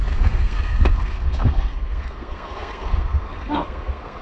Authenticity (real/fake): fake